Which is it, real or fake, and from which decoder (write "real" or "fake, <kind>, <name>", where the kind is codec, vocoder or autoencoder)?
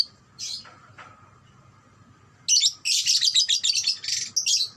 real